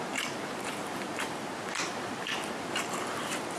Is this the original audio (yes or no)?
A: no